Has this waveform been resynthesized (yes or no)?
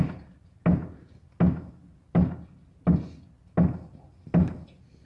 no